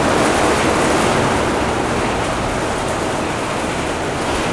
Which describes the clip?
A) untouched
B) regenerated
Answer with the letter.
A